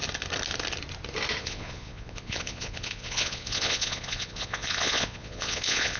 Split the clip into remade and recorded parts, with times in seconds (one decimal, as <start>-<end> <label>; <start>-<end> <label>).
0.0-1.4 recorded; 1.4-6.0 remade